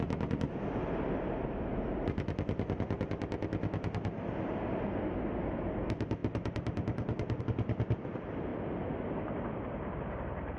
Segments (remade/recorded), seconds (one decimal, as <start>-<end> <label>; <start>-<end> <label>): 0.0-6.2 recorded; 6.2-7.4 remade; 7.4-10.6 recorded